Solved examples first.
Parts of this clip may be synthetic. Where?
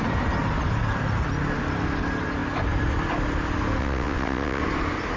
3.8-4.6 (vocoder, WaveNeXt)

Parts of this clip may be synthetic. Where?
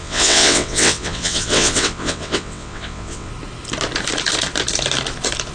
0.0-3.3 (vocoder, WaveNeXt)